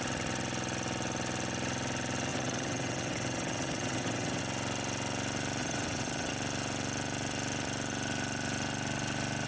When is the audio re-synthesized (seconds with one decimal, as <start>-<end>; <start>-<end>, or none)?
2.3-4.4; 5.6-6.3